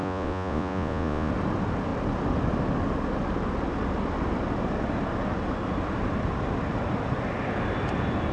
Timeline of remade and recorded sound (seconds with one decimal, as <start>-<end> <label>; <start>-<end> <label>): 0.0-1.3 remade; 1.3-8.3 recorded